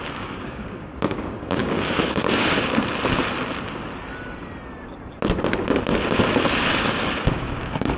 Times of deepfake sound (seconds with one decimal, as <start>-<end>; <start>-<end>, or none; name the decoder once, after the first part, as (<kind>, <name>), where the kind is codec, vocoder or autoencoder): 0.0-2.7 (codec, DAC); 6.8-8.0